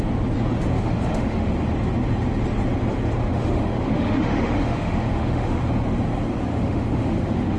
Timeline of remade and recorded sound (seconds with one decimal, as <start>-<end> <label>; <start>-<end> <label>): 0.0-0.7 recorded; 0.7-1.5 remade; 1.5-3.3 recorded; 3.3-5.6 remade; 5.6-6.5 recorded; 6.5-7.6 remade